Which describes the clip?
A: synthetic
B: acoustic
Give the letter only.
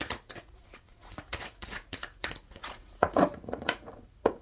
A